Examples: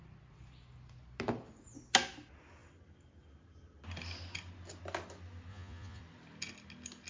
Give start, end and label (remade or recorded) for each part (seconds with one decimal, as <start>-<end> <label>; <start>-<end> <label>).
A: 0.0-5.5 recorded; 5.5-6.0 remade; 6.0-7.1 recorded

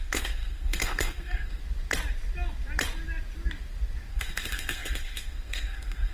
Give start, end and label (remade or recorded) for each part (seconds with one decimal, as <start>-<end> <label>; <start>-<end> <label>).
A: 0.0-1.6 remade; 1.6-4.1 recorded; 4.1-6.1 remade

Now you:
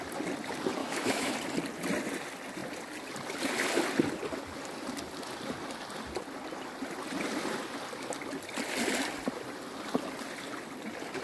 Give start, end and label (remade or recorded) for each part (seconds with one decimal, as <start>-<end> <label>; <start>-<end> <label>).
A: 0.0-0.8 recorded; 0.8-1.3 remade; 1.3-11.2 recorded

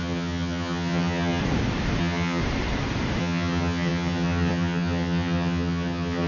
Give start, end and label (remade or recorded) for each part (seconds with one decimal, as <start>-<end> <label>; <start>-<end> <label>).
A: 0.0-1.4 remade; 1.4-2.0 recorded; 2.0-2.4 remade; 2.4-3.2 recorded; 3.2-6.3 remade

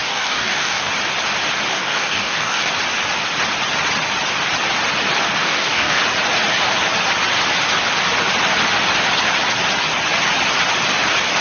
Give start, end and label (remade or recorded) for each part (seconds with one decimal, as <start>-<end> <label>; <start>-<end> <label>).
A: 0.0-0.9 remade; 0.9-1.7 recorded; 1.7-2.7 remade; 2.7-5.4 recorded; 5.4-6.0 remade; 6.0-11.4 recorded

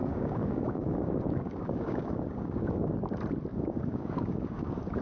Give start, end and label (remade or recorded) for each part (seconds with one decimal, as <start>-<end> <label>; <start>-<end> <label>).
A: 0.0-2.9 remade; 2.9-3.5 recorded; 3.5-5.0 remade